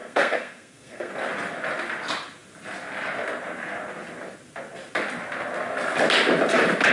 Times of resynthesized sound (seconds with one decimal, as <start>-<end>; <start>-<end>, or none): 0.0-1.1

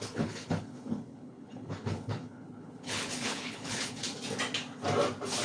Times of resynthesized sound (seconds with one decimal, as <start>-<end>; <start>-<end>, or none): 0.0-4.0

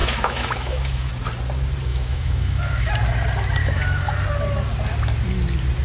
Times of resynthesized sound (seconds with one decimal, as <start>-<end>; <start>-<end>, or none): 0.0-1.1; 1.9-2.9; 3.6-4.1

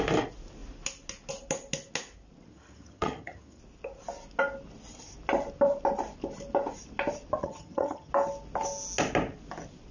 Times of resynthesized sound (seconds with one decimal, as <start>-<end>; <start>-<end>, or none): 2.5-3.6; 7.4-8.1

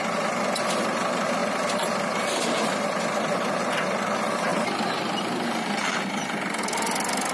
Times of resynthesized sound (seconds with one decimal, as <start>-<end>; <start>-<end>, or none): none